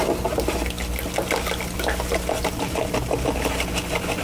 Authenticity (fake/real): real